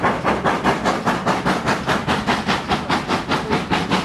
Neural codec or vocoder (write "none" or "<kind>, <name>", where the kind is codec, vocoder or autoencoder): none